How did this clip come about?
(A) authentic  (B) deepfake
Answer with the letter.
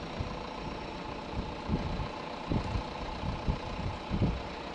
A